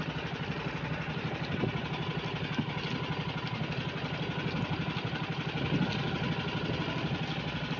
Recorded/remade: recorded